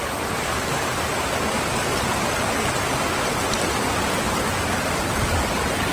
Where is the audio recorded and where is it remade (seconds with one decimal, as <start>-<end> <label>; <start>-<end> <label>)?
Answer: 0.0-5.9 recorded